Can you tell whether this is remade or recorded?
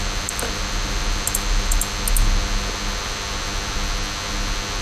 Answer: recorded